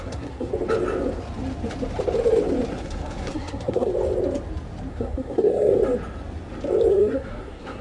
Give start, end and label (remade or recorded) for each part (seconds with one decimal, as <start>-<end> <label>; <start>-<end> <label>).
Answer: 0.0-0.5 remade; 0.5-2.7 recorded; 2.7-3.9 remade; 3.9-4.9 recorded; 4.9-5.8 remade; 5.8-6.9 recorded; 6.9-7.8 remade